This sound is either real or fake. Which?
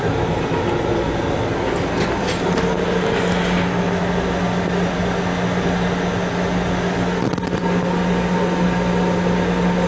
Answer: real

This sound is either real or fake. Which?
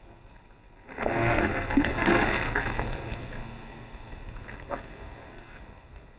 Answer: fake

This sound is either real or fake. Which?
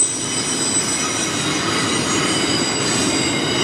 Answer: real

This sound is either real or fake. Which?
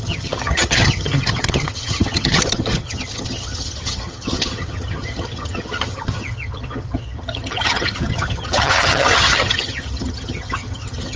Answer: fake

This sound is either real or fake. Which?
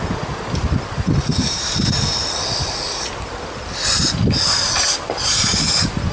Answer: real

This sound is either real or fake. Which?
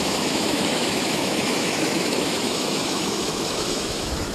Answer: fake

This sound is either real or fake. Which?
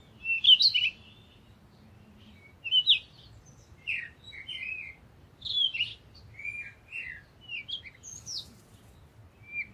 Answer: real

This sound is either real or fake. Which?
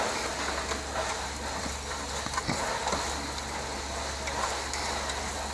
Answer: real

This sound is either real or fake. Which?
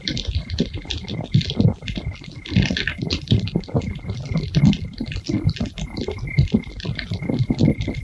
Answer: real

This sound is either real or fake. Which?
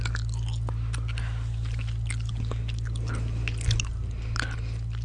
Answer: real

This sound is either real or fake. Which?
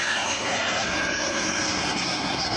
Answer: fake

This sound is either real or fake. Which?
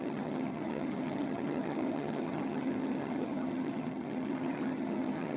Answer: fake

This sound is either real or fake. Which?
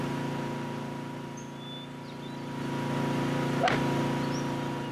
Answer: real